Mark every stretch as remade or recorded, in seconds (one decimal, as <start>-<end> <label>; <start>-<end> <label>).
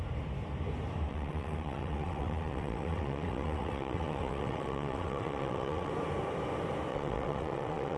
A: 0.0-1.1 recorded; 1.1-5.9 remade; 5.9-6.9 recorded; 6.9-8.0 remade